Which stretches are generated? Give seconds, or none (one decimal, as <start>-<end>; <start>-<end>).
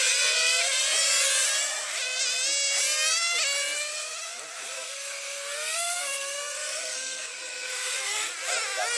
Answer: 4.7-8.3